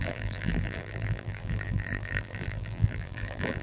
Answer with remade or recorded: remade